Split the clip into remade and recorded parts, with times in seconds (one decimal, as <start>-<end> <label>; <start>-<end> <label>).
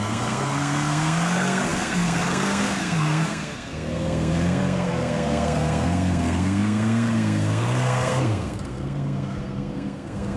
0.0-10.4 remade